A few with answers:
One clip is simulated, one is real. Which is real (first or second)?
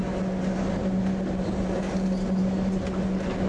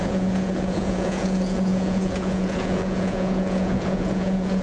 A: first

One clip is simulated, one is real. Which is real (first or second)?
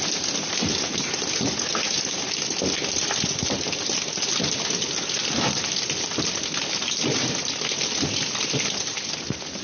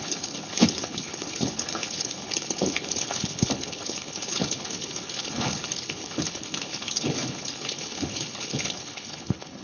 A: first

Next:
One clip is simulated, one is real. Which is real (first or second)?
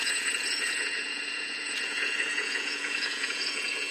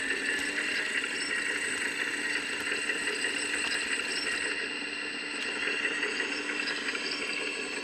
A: second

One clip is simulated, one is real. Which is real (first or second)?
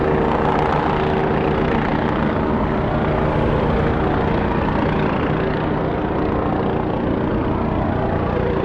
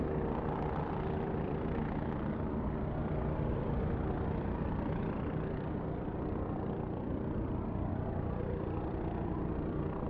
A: first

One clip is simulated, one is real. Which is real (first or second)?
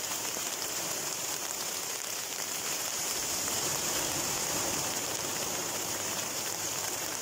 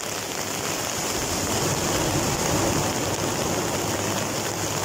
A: second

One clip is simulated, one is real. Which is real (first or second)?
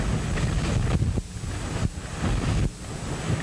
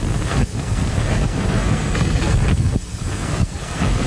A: first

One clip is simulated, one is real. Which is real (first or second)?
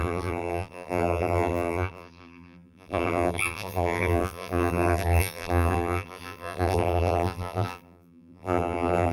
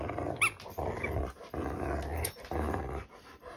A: second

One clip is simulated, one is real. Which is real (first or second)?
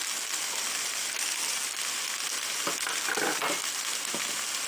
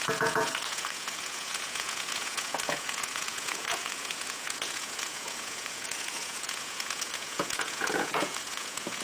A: first